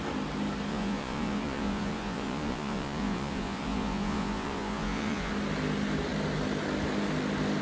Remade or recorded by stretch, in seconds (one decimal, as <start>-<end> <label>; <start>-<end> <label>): 0.0-0.7 recorded; 0.7-5.3 remade; 5.3-7.6 recorded